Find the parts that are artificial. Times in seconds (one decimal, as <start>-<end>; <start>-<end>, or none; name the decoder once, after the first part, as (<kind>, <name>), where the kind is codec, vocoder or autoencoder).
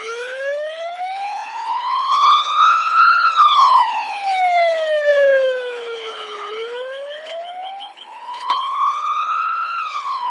0.0-10.3 (codec, HILCodec)